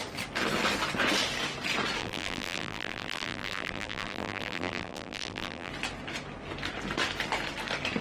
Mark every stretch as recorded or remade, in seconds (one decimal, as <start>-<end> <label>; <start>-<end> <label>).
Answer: 0.0-2.0 recorded; 2.0-5.7 remade; 5.7-8.0 recorded